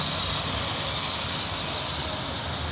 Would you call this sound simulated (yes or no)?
no